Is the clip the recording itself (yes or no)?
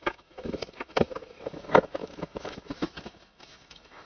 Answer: no